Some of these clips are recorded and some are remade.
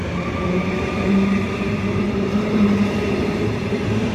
remade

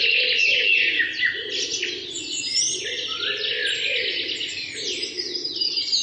recorded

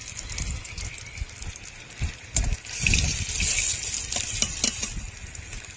recorded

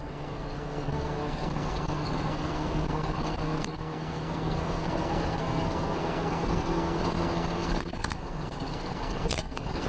remade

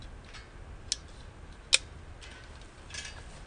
recorded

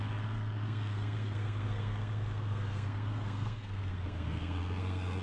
remade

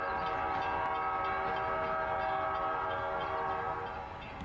recorded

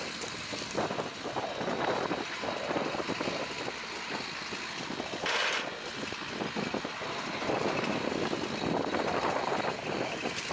recorded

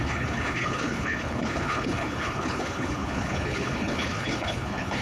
remade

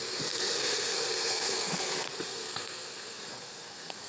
remade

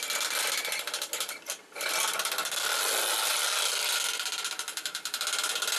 recorded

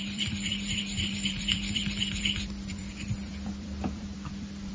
remade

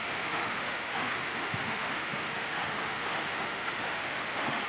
remade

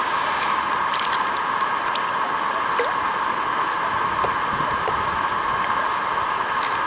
recorded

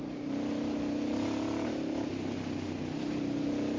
recorded